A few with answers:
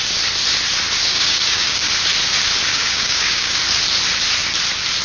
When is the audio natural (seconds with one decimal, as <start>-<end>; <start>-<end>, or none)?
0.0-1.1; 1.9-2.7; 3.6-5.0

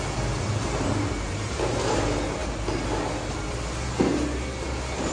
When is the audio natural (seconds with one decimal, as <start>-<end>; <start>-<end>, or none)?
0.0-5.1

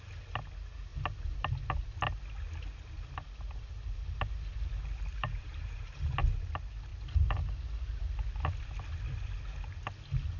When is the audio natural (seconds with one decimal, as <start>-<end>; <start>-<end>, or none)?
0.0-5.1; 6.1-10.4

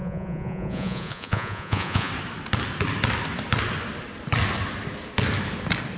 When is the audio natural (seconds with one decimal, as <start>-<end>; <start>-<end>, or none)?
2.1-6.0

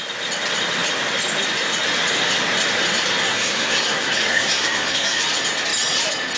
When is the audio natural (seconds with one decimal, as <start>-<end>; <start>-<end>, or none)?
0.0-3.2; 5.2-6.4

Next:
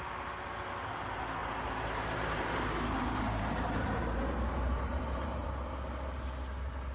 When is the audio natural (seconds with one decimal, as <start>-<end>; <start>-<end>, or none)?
0.0-1.4; 5.5-6.9